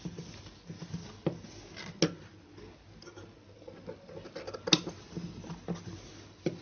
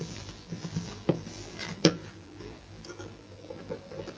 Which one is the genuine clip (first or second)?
first